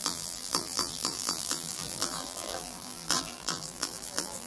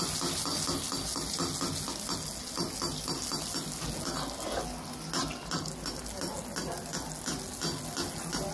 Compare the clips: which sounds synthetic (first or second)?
first